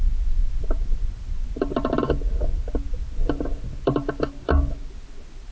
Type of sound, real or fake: real